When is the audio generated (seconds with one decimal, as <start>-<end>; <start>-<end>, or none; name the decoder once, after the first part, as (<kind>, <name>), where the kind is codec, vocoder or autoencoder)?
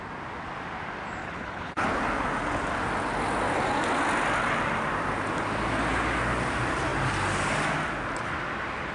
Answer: 1.2-2.0 (codec, HILCodec)